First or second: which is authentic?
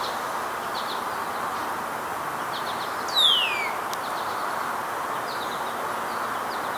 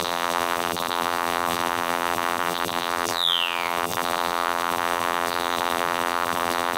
first